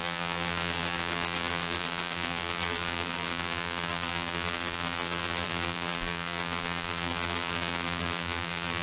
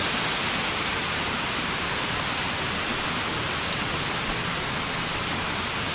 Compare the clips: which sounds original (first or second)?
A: second